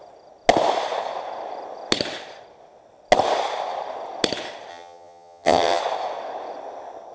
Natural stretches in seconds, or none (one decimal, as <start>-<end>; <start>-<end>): 0.0-4.7; 5.8-7.1